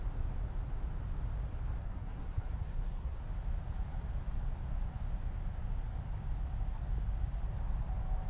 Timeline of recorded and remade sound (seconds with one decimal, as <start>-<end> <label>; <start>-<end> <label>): 0.0-1.8 recorded; 1.8-3.2 remade; 3.2-8.3 recorded

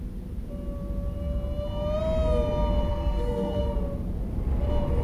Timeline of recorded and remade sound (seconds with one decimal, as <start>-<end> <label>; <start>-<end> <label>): 0.0-2.9 recorded; 2.9-3.6 remade; 3.6-5.0 recorded

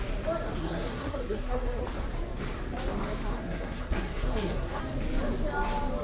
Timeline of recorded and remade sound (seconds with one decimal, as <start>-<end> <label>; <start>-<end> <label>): 0.0-0.6 recorded; 0.6-1.8 remade; 1.8-3.3 recorded; 3.3-4.8 remade; 4.8-6.0 recorded

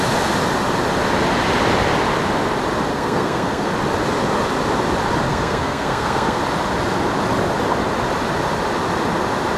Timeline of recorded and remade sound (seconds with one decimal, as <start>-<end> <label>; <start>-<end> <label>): 0.0-2.9 recorded; 2.9-3.7 remade; 3.7-5.3 recorded; 5.3-6.4 remade; 6.4-9.6 recorded

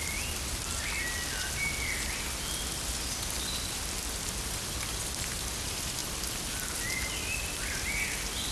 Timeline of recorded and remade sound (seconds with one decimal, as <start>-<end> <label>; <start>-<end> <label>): 0.0-8.5 recorded

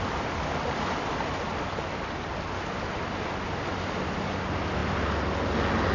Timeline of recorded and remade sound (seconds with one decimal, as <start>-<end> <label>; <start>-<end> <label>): 0.0-5.9 recorded

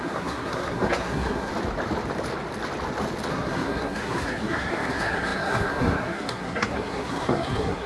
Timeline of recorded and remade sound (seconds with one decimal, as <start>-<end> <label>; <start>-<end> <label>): 0.0-1.5 remade; 1.5-3.3 recorded; 3.3-7.9 remade

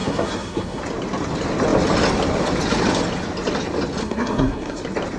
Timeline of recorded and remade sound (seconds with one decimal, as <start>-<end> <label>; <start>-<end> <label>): 0.0-0.8 remade; 0.8-4.0 recorded; 4.0-4.8 remade; 4.8-5.2 recorded